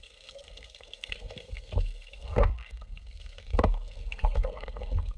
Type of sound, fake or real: fake